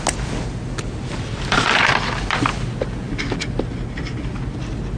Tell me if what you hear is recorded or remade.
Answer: recorded